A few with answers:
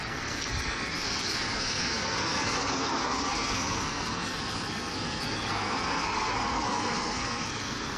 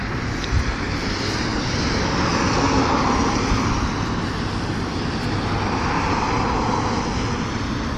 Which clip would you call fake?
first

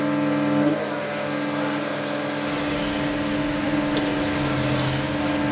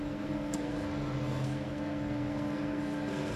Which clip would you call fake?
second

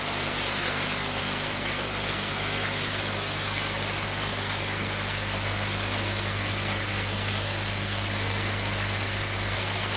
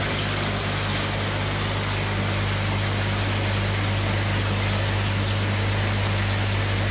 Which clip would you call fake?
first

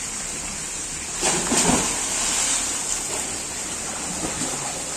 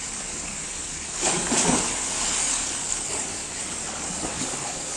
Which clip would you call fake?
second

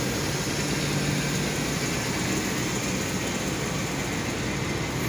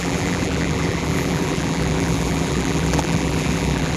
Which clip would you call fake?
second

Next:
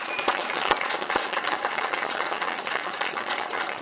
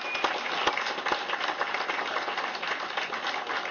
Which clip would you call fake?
first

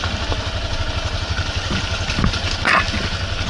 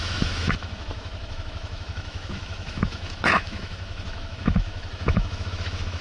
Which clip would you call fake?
second